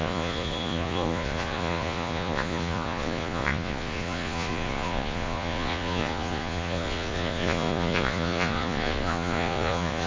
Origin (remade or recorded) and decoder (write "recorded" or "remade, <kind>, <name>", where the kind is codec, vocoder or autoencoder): remade, vocoder, Vocos